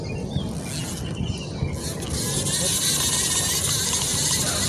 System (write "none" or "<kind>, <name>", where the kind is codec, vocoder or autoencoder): none